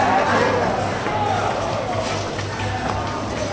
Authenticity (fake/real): real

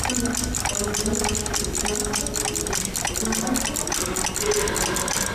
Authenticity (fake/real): real